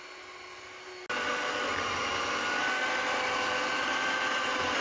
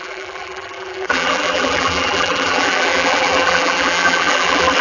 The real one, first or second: first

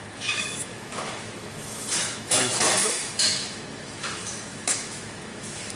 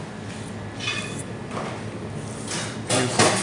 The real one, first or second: second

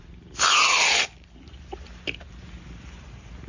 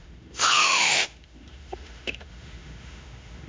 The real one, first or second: first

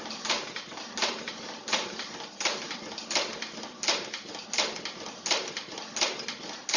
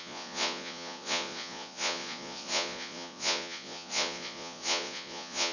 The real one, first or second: first